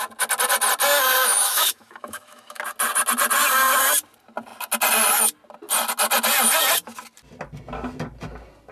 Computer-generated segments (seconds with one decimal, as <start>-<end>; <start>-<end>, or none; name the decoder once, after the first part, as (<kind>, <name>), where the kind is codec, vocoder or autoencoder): 1.2-2.6 (autoencoder, DAC-VAE)